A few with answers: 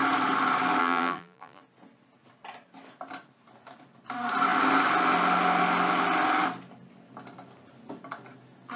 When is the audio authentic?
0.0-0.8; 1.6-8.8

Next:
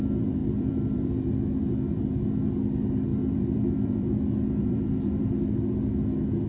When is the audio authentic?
0.0-0.4; 1.2-3.1; 5.3-6.5

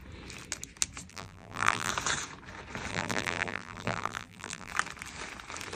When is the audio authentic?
0.0-1.1; 1.9-2.9; 4.7-5.8

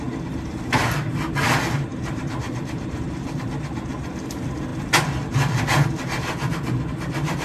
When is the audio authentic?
0.0-1.9; 3.3-7.4